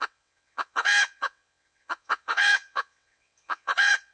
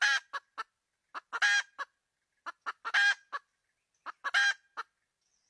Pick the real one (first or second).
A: second